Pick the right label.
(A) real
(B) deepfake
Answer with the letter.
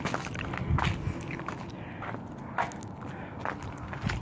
A